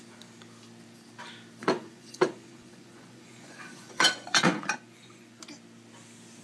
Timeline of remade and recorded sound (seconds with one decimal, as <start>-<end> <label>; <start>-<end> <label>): 0.0-1.6 recorded; 1.6-5.4 remade; 5.4-6.4 recorded